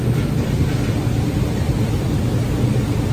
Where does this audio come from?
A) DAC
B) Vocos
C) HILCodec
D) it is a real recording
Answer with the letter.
D